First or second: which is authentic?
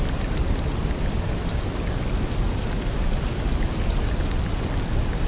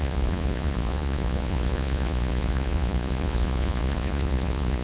first